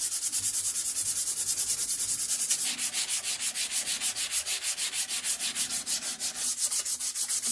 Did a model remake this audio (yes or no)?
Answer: no